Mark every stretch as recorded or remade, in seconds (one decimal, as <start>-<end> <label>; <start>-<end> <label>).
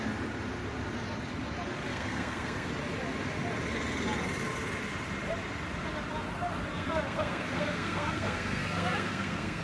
0.0-1.9 recorded; 1.9-2.7 remade; 2.7-6.7 recorded; 6.7-9.6 remade